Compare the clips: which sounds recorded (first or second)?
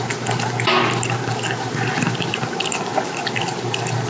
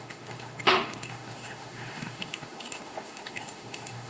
first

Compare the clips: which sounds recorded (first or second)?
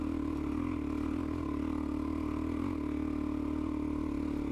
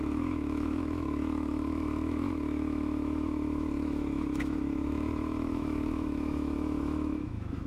first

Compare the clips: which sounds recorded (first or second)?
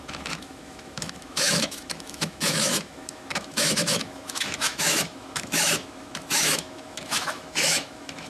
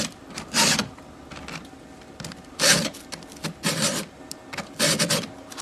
second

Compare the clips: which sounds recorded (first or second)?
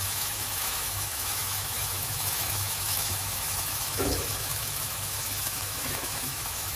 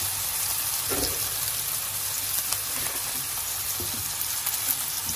second